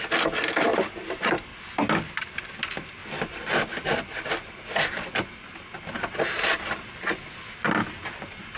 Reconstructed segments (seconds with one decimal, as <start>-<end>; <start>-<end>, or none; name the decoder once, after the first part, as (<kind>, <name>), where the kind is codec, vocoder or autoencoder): none